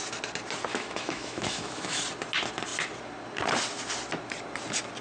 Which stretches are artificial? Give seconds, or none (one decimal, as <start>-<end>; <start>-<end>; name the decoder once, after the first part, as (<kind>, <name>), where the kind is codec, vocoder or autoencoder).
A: 0.7-2.0 (autoencoder, DAC-VAE)